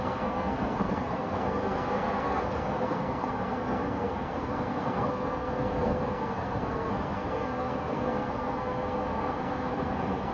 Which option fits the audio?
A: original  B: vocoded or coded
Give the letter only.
B